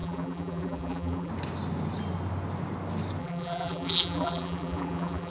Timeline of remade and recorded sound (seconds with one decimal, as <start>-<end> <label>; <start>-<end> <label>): 0.0-1.3 remade; 1.3-3.2 recorded; 3.2-5.3 remade